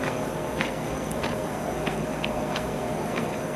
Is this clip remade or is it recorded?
remade